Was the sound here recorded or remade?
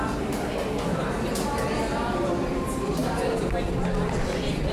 recorded